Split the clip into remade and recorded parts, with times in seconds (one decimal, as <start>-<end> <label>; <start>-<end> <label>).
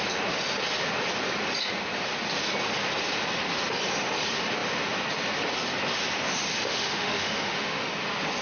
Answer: 0.0-6.5 recorded; 6.5-7.9 remade; 7.9-8.4 recorded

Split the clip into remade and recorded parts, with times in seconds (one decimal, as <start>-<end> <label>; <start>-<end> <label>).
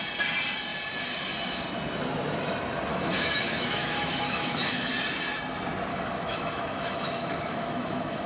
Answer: 0.0-2.9 recorded; 2.9-4.9 remade; 4.9-5.9 recorded; 5.9-8.3 remade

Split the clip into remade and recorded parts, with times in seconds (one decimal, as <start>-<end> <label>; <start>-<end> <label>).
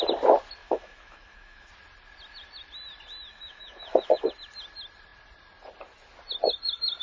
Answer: 0.0-0.6 recorded; 0.6-1.7 remade; 1.7-3.3 recorded; 3.3-4.3 remade; 4.3-7.0 recorded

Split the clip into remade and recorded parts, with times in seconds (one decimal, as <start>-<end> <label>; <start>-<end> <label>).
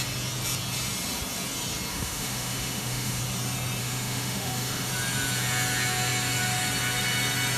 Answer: 0.0-1.9 recorded; 1.9-3.2 remade; 3.2-3.8 recorded; 3.8-4.9 remade; 4.9-7.6 recorded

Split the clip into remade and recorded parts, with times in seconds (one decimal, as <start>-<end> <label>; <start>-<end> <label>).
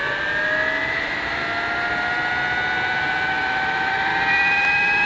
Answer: 0.0-0.9 recorded; 0.9-1.4 remade; 1.4-3.3 recorded; 3.3-4.1 remade; 4.1-5.1 recorded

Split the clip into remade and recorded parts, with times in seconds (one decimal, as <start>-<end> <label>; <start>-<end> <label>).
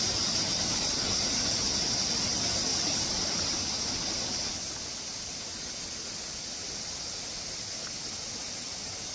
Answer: 0.0-9.1 recorded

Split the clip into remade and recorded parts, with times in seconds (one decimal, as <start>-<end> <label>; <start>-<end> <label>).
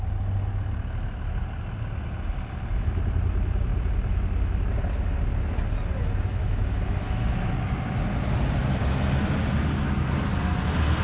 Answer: 0.0-6.4 recorded; 6.4-7.3 remade; 7.3-11.0 recorded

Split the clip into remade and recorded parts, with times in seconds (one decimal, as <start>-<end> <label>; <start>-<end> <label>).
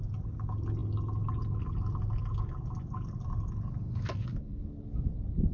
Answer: 0.0-5.5 recorded